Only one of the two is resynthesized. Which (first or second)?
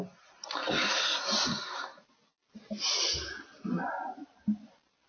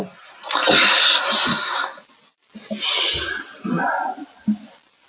second